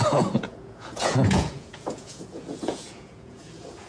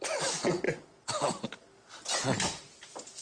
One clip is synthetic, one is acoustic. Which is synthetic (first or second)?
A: first